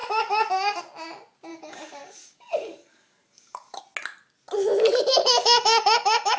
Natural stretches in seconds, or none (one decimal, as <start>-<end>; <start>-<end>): 0.8-1.5; 3.8-5.2